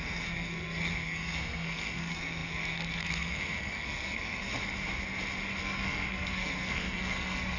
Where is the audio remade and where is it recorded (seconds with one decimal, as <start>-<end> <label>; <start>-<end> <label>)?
0.0-4.5 remade; 4.5-5.6 recorded; 5.6-7.6 remade